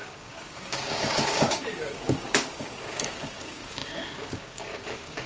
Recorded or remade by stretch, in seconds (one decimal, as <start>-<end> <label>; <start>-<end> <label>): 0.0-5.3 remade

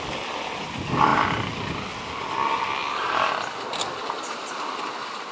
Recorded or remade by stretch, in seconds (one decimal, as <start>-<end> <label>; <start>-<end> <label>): 0.0-5.3 recorded

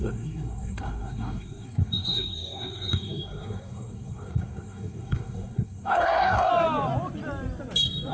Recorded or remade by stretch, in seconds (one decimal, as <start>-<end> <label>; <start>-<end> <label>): 0.0-6.5 remade; 6.5-8.1 recorded

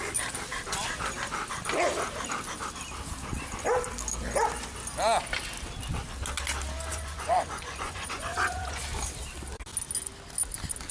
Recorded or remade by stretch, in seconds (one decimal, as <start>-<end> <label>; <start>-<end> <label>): 0.0-6.9 recorded; 6.9-8.8 remade; 8.8-10.9 recorded

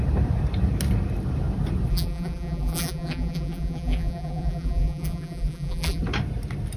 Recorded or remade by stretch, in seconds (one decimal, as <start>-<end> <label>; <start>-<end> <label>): 0.0-1.9 recorded; 1.9-6.0 remade; 6.0-6.8 recorded

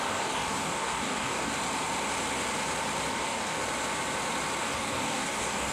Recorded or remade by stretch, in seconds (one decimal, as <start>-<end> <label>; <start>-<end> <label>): 0.0-1.5 remade; 1.5-3.1 recorded; 3.1-3.6 remade; 3.6-4.6 recorded; 4.6-5.7 remade